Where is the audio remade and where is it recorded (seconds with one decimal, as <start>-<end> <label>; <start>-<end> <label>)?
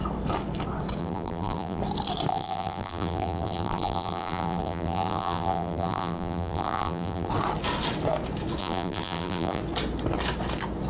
0.0-1.0 recorded; 1.0-1.8 remade; 1.8-2.3 recorded; 2.3-7.3 remade; 7.3-8.6 recorded; 8.6-9.6 remade; 9.6-10.9 recorded